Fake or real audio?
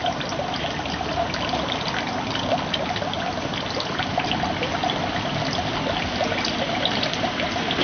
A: real